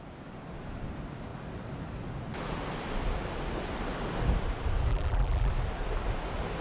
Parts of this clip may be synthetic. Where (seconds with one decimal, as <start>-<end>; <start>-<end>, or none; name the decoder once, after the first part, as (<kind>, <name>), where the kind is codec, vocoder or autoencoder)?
4.9-5.5 (vocoder, BigVGAN v2)